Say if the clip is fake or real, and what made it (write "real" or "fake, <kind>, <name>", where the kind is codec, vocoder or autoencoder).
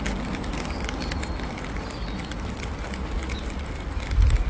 real